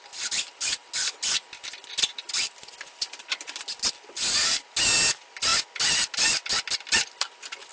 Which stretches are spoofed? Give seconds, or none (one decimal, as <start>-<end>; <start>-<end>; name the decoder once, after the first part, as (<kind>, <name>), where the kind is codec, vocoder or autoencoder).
none